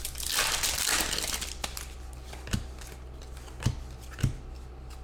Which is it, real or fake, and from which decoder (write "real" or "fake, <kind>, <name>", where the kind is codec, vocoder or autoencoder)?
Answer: real